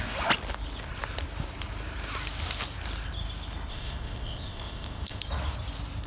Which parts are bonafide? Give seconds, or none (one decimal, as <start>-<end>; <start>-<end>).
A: 0.0-3.7; 5.2-6.1